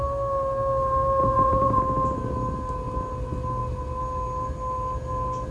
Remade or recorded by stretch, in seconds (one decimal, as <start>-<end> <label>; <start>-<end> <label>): 0.0-1.2 recorded; 1.2-1.8 remade; 1.8-5.5 recorded